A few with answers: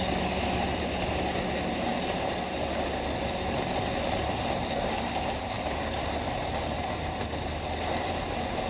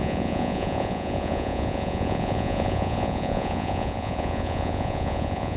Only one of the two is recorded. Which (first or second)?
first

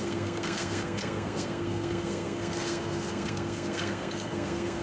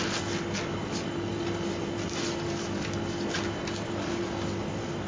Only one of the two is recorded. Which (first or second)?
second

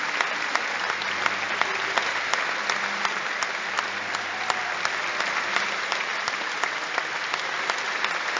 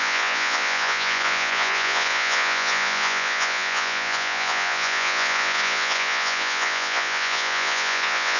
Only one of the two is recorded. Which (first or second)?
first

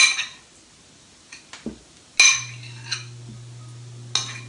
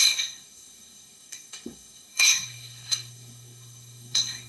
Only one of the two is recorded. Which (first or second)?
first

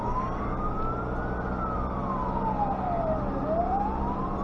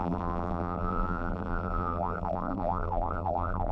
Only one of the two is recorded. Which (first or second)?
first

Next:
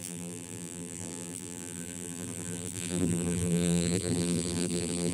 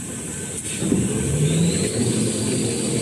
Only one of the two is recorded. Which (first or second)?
second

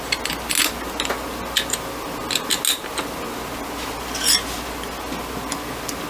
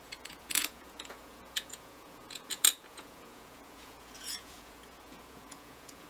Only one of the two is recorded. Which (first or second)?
first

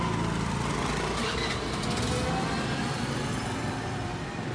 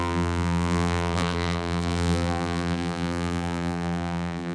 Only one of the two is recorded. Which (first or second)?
first